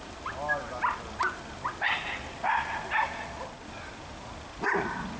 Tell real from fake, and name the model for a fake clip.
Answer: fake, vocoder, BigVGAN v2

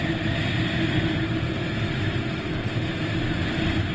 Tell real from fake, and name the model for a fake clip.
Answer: real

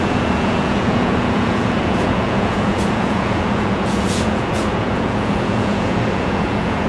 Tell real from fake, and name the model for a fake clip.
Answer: fake, vocoder, Vocos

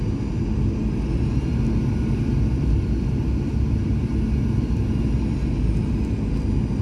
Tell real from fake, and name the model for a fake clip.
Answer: real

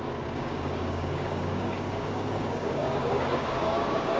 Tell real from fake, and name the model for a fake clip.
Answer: fake, codec, DAC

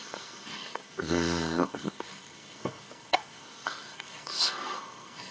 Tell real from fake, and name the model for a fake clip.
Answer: fake, codec, SNAC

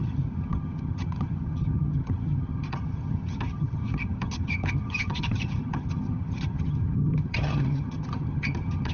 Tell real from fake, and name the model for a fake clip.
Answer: fake, vocoder, HiFi-GAN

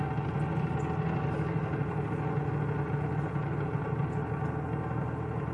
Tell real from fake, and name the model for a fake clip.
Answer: real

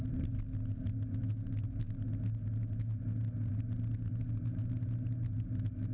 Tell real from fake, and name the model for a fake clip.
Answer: real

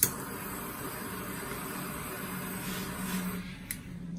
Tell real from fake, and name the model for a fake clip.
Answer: real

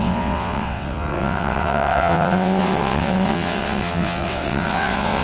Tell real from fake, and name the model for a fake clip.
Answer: fake, vocoder, WaveNeXt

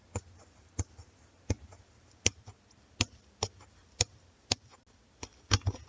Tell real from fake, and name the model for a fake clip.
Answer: real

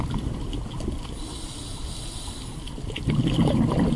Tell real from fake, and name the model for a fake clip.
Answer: real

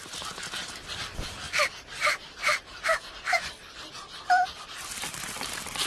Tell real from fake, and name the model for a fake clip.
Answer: fake, vocoder, BigVGAN v2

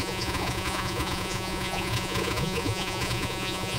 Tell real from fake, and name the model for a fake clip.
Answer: fake, vocoder, Vocos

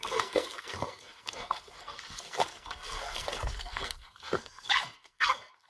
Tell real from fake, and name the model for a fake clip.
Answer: fake, codec, SNAC